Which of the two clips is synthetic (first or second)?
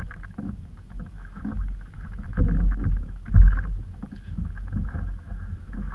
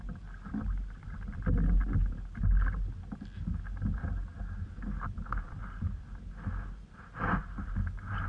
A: first